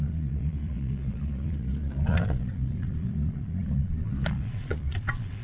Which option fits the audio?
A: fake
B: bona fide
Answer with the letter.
A